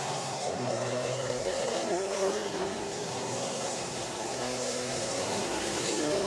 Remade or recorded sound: remade